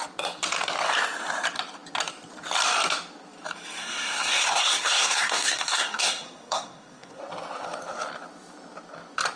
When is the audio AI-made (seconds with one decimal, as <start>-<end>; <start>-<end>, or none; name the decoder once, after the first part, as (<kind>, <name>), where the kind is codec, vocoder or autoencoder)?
3.8-7.2 (codec, SNAC)

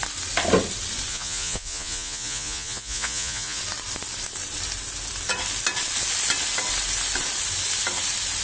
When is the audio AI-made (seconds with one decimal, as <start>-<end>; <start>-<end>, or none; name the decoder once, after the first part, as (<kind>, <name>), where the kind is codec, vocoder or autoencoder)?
1.1-3.6 (vocoder, Vocos)

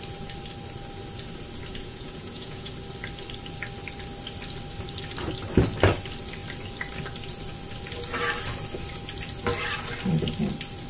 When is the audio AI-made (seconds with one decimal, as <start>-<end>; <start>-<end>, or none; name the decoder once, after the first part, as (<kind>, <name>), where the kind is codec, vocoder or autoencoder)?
1.7-2.7 (vocoder, Vocos)

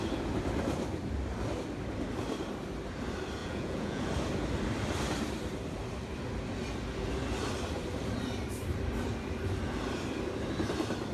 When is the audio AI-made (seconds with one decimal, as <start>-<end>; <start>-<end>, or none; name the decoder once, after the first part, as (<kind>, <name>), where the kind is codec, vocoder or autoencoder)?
3.4-4.1 (vocoder, Vocos)

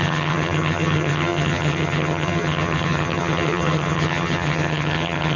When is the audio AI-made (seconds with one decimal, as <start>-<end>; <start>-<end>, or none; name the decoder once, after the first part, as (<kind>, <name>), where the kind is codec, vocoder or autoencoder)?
0.0-5.4 (vocoder, HiFi-GAN)